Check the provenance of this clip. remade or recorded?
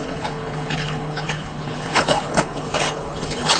remade